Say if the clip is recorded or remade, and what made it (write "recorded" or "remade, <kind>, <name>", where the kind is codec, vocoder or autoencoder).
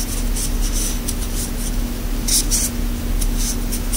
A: recorded